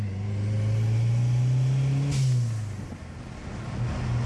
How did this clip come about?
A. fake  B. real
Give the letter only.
B